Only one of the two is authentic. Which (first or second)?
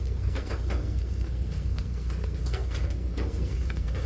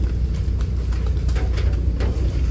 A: second